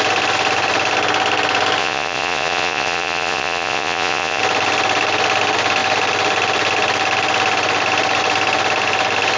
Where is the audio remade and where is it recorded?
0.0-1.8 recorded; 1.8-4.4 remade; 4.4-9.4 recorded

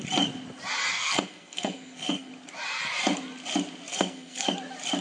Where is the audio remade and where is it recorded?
0.0-0.9 recorded; 0.9-2.3 remade; 2.3-3.9 recorded; 3.9-4.5 remade; 4.5-5.0 recorded

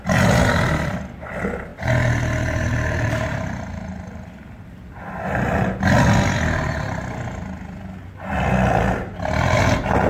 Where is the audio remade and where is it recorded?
0.0-10.1 recorded

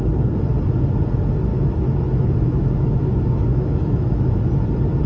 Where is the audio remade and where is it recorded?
0.0-1.5 recorded; 1.5-4.4 remade; 4.4-5.1 recorded

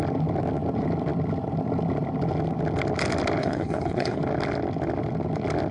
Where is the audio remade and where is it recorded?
0.0-3.4 recorded; 3.4-4.2 remade; 4.2-5.7 recorded

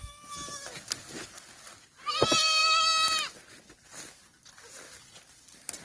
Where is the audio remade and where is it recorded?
0.0-5.8 recorded

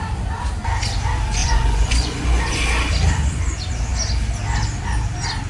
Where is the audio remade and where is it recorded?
0.0-1.4 recorded; 1.4-2.6 remade; 2.6-5.5 recorded

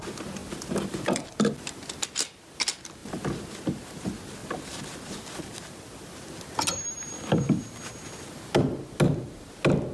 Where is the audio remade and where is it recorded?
0.0-0.4 recorded; 0.4-2.0 remade; 2.0-3.0 recorded; 3.0-4.0 remade; 4.0-9.9 recorded